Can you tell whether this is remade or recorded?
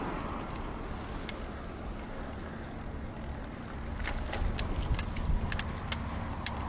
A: recorded